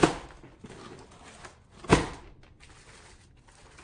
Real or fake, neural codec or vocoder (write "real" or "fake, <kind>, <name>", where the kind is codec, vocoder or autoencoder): real